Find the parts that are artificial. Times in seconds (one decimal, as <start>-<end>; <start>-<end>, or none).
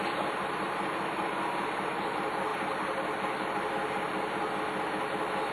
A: none